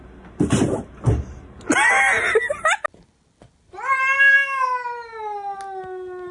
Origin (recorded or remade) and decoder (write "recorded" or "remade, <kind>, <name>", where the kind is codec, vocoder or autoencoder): recorded